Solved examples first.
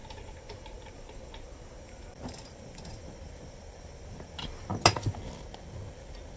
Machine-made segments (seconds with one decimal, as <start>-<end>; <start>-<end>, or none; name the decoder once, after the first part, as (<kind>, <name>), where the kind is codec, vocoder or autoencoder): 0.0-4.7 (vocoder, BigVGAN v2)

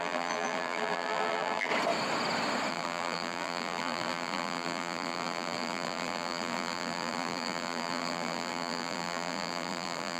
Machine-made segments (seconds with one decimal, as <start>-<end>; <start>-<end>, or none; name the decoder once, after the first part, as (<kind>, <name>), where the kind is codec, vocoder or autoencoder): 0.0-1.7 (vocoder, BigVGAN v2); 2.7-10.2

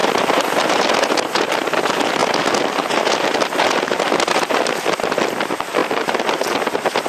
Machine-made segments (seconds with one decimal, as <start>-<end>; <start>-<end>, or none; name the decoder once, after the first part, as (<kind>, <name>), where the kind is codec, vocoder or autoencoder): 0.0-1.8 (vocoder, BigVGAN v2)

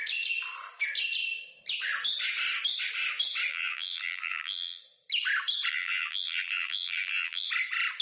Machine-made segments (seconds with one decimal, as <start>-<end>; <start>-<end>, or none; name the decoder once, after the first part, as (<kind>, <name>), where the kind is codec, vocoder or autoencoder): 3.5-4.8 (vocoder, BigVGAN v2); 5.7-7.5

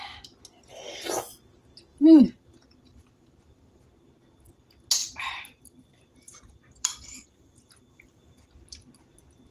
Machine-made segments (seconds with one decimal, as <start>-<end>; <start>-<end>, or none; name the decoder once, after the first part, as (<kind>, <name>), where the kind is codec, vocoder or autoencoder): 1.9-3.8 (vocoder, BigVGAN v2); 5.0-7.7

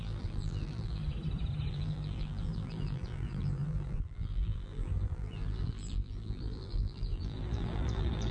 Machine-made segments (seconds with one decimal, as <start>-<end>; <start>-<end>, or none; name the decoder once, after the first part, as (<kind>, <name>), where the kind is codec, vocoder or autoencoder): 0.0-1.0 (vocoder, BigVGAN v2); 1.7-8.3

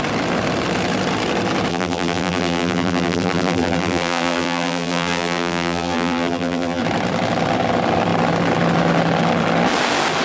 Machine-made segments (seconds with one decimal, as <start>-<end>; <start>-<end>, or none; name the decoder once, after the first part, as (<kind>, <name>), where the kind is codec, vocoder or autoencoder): 1.7-6.8 (vocoder, BigVGAN v2)